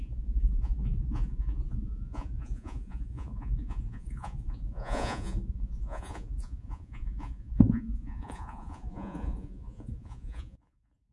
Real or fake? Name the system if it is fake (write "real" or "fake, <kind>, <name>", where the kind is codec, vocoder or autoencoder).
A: fake, vocoder, Vocos